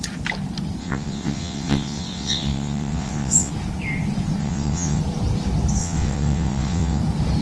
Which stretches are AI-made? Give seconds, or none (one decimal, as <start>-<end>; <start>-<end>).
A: 0.8-3.5; 4.4-5.0; 5.8-7.0